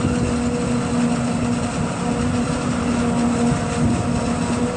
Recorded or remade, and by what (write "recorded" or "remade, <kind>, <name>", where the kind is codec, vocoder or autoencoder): recorded